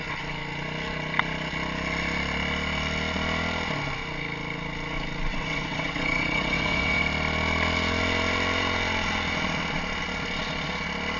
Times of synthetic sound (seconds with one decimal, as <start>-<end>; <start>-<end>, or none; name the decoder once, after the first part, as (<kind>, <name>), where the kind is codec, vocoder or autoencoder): 5.3-7.0 (vocoder, WaveNeXt)

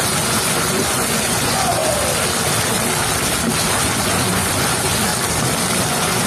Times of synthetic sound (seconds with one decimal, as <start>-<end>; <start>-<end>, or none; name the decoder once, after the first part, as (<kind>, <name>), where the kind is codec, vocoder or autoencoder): 0.0-1.8 (vocoder, Vocos); 3.7-5.1; 5.8-6.3

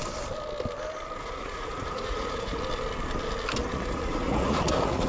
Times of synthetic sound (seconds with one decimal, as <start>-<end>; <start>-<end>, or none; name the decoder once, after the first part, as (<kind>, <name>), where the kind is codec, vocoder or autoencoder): 1.2-2.6 (vocoder, Vocos); 3.6-5.1

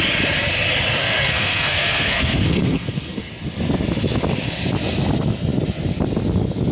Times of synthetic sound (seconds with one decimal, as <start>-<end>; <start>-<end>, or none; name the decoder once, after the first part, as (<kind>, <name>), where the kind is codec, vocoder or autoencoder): 1.0-3.3 (codec, SNAC)

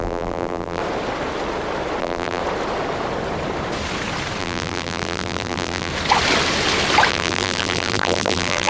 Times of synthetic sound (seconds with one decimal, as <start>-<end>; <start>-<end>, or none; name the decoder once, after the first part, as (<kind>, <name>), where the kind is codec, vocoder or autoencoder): 0.0-0.8 (vocoder, BigVGAN v2); 2.0-2.4; 4.4-5.9; 7.1-8.7

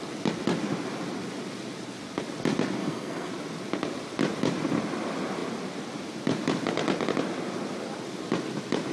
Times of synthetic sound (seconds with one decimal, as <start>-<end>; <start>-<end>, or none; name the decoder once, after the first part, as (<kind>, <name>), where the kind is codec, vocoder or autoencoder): 2.8-3.3 (codec, SNAC)

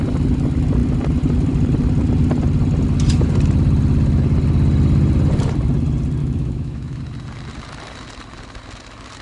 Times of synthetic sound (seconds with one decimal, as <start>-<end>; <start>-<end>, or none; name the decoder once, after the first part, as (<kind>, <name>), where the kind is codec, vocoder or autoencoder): 6.2-7.0 (autoencoder, DAC-VAE)

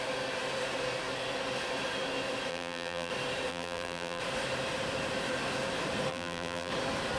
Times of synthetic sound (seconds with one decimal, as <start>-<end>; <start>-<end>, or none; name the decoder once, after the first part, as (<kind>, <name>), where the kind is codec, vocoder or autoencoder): 2.5-3.1 (vocoder, BigVGAN v2); 3.5-4.2; 6.1-6.7